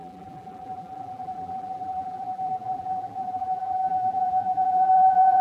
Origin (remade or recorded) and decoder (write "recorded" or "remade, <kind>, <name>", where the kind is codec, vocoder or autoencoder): remade, vocoder, BigVGAN v2